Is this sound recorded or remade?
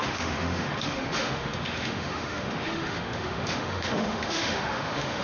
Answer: remade